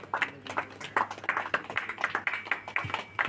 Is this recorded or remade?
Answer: recorded